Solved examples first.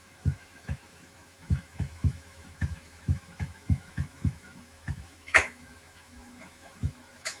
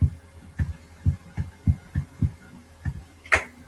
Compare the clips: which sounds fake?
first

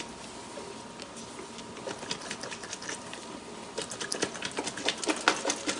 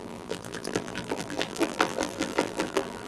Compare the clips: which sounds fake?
second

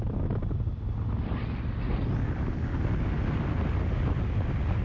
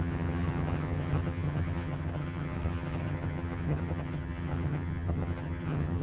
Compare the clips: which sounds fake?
second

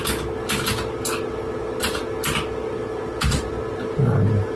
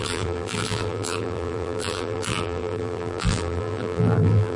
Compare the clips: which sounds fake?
second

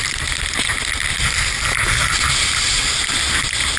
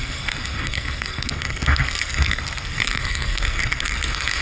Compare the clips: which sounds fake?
second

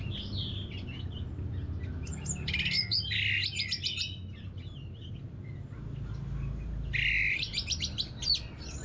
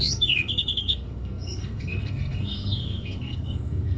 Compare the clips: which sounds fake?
second